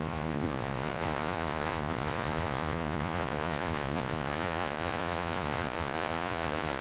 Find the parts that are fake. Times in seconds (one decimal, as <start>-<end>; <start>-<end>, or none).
0.0-6.8